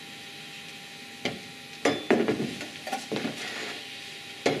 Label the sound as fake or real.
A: real